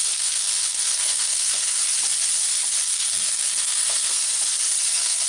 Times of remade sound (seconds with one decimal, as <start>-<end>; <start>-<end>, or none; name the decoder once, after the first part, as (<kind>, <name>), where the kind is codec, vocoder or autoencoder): 0.0-1.8 (codec, SNAC); 2.8-4.2; 4.8-5.3